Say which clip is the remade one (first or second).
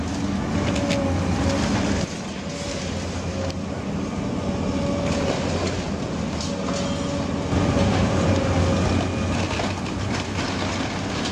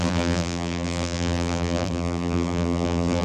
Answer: second